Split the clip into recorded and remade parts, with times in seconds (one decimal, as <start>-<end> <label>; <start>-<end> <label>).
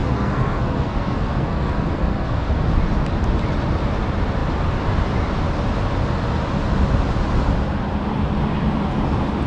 0.0-2.6 remade; 2.6-9.5 recorded